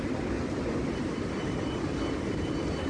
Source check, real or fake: fake